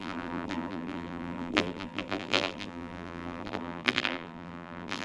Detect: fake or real fake